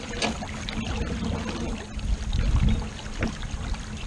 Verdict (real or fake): real